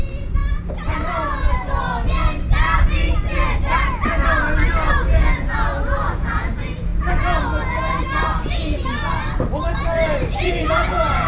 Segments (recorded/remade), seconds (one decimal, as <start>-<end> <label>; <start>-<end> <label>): 0.0-0.4 remade; 0.4-4.9 recorded; 4.9-6.9 remade; 6.9-10.3 recorded; 10.3-11.3 remade